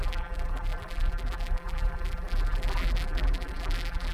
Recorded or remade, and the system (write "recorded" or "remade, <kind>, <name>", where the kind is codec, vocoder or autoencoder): remade, vocoder, BigVGAN v2